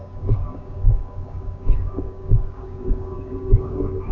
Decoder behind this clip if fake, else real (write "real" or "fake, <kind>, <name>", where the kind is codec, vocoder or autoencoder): fake, codec, DAC